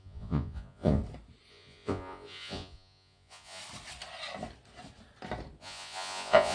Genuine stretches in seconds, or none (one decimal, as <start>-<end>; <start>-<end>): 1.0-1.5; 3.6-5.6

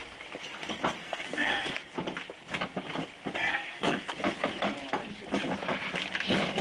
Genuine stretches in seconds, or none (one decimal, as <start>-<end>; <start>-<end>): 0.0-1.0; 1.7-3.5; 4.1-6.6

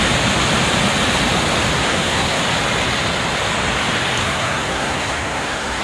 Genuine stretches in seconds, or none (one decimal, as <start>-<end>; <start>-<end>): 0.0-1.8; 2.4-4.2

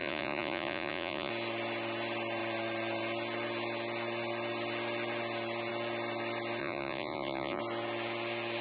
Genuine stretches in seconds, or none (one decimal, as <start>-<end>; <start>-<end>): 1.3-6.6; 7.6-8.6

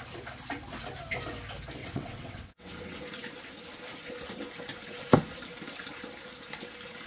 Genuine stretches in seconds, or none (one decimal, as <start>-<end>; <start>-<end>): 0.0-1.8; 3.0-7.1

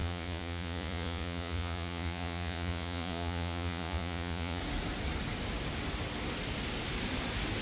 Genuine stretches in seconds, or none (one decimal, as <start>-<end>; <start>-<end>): 4.6-7.6